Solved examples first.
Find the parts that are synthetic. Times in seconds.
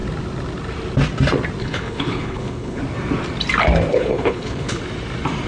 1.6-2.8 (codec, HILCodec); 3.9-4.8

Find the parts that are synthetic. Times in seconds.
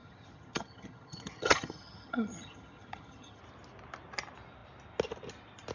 0.0-3.4 (vocoder, HiFi-GAN)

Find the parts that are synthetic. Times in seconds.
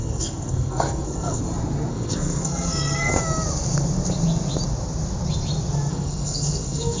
0.0-1.4 (codec, SNAC); 1.9-3.1; 5.9-7.0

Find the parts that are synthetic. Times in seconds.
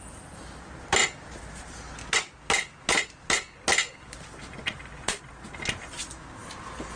none